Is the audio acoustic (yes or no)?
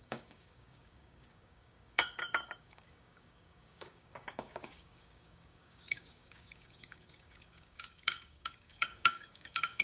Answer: no